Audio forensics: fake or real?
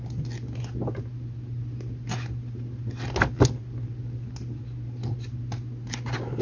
real